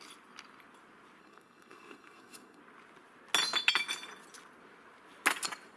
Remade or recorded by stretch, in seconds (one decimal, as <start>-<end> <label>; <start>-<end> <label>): 0.0-1.2 recorded; 1.2-2.6 remade; 2.6-5.8 recorded

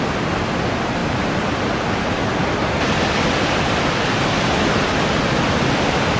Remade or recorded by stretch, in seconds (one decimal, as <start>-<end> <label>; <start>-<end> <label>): 0.0-6.2 recorded

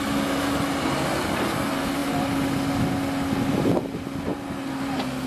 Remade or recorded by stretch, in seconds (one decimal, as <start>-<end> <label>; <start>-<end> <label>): 0.0-5.3 recorded